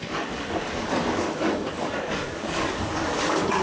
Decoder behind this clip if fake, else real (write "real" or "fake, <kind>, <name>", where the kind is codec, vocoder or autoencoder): fake, codec, DAC